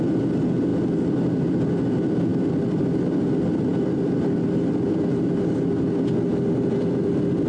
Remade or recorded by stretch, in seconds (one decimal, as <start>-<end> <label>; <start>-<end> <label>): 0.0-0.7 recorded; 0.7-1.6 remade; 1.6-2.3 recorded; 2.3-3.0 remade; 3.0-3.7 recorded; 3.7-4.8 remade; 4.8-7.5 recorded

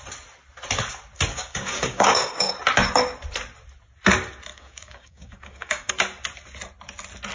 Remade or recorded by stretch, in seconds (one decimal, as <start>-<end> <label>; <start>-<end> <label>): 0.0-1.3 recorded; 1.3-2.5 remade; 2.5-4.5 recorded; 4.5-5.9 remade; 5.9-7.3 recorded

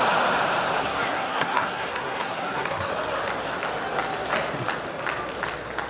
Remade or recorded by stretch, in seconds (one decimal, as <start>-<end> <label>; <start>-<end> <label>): 0.0-0.8 recorded; 0.8-2.9 remade; 2.9-5.9 recorded